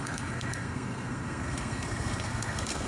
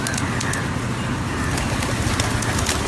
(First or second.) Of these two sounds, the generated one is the first